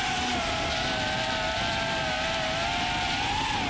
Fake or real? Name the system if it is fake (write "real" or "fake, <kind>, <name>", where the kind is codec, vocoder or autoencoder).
real